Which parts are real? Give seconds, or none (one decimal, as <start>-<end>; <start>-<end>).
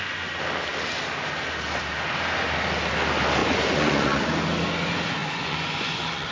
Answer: 0.0-3.4; 4.2-5.2